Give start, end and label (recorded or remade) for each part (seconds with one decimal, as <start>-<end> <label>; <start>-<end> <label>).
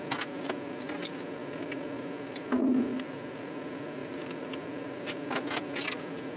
0.0-2.9 recorded; 2.9-3.5 remade; 3.5-4.0 recorded; 4.0-5.1 remade; 5.1-6.4 recorded